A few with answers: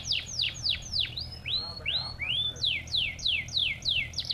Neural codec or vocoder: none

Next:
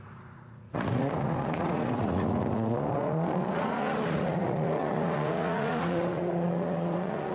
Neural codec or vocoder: vocoder, Vocos